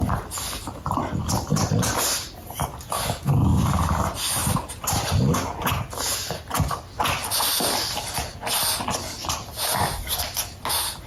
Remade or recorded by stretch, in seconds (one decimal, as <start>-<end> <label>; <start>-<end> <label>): 0.0-11.1 recorded